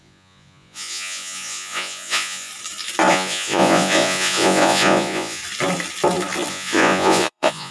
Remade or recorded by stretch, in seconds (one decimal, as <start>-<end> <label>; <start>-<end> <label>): 0.0-2.5 remade; 2.5-3.1 recorded; 3.1-5.4 remade; 5.4-6.5 recorded; 6.5-7.7 remade